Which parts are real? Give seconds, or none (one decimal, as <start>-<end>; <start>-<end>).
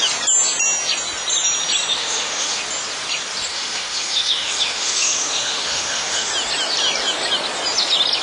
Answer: 0.0-1.9; 2.6-3.5; 6.3-8.2